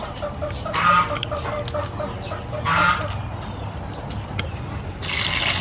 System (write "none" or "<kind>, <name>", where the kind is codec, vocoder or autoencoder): none